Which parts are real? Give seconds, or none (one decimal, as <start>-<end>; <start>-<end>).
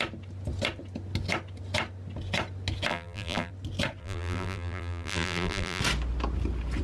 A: 0.0-2.9; 3.5-4.0; 5.8-6.8